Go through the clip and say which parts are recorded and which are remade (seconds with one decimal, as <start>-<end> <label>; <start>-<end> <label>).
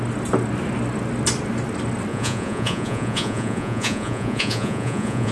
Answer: 0.0-2.1 recorded; 2.1-5.3 remade